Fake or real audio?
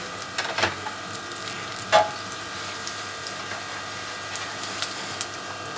real